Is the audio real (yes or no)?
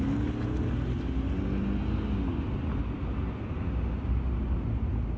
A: yes